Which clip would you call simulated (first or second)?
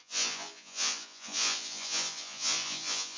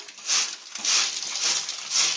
first